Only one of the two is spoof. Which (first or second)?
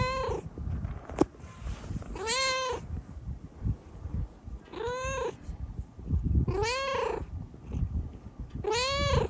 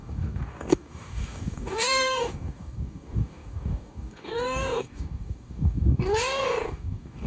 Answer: second